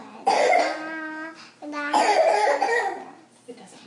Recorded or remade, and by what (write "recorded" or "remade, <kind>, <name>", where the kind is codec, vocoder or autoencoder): recorded